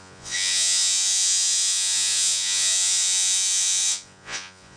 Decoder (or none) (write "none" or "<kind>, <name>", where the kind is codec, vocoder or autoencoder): vocoder, Vocos